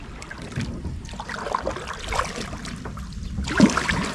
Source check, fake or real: real